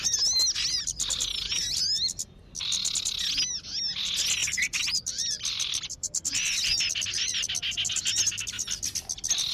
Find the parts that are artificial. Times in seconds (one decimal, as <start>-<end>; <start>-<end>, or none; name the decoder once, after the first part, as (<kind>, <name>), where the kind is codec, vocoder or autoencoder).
4.4-7.5 (vocoder, BigVGAN v2)